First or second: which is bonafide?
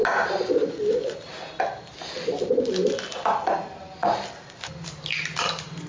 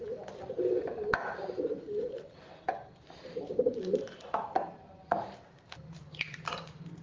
first